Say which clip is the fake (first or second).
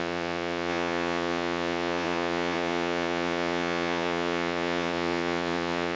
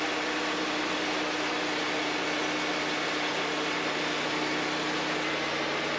first